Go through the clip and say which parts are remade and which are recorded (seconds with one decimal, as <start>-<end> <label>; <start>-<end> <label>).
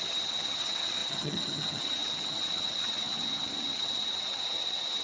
0.0-5.0 remade